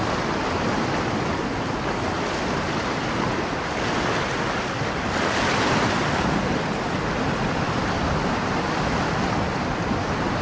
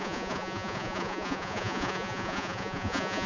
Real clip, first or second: first